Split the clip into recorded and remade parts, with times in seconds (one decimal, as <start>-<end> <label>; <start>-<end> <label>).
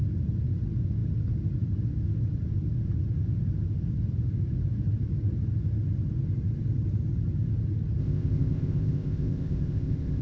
0.0-8.0 recorded; 8.0-10.2 remade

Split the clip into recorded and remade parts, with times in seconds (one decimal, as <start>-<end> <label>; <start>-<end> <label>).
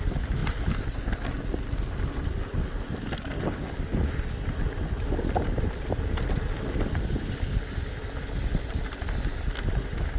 0.0-10.2 recorded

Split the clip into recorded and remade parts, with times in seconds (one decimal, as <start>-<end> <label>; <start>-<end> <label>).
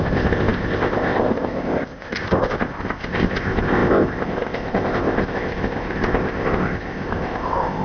0.0-7.8 remade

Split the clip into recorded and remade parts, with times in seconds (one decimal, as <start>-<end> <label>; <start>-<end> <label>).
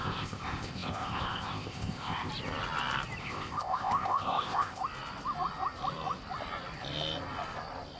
0.0-2.3 remade; 2.3-3.2 recorded; 3.2-4.8 remade; 4.8-8.0 recorded